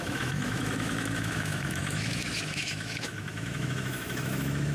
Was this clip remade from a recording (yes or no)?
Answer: yes